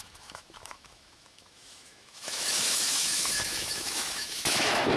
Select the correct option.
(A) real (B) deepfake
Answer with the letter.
B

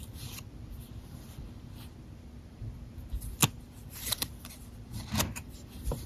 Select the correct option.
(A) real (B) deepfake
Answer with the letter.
B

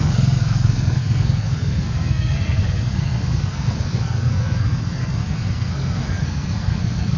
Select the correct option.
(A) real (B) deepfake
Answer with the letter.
B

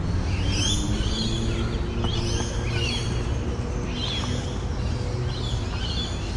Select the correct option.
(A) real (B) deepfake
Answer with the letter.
A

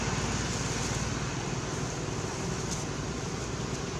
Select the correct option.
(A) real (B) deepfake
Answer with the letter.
A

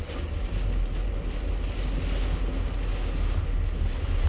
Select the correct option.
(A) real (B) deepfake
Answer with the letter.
A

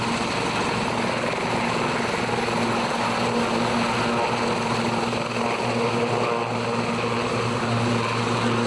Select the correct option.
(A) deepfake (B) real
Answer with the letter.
B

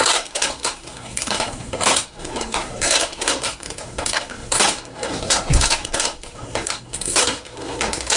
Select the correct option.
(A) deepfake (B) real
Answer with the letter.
A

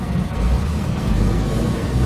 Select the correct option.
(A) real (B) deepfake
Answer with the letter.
B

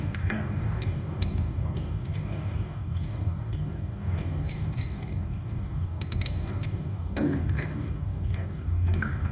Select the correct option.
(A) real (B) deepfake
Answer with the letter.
B